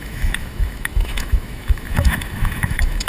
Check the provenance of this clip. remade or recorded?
remade